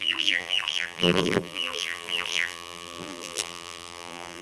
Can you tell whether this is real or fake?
fake